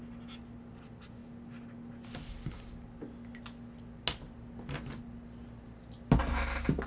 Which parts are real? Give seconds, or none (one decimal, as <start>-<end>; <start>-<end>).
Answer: 0.0-6.9